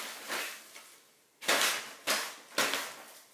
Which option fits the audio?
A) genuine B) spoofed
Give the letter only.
A